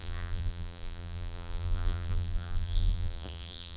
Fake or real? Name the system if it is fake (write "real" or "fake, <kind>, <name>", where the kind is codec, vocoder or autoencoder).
fake, vocoder, BigVGAN v2